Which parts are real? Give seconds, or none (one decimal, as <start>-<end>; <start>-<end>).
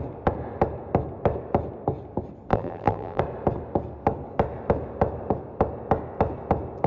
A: 0.0-2.5; 3.2-6.9